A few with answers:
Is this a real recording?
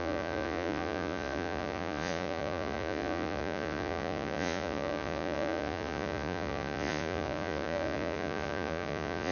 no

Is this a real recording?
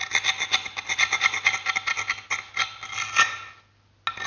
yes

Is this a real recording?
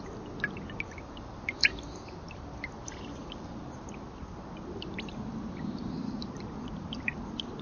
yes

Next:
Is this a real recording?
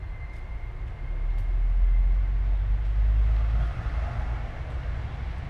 yes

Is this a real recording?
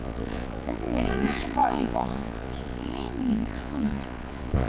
no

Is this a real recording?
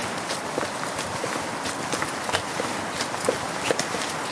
yes